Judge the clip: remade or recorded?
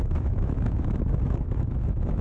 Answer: remade